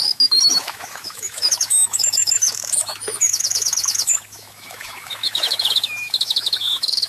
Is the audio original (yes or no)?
no